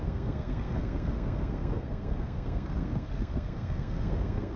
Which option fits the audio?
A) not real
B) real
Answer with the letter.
A